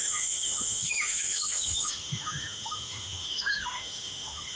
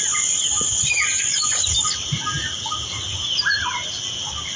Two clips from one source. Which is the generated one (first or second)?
first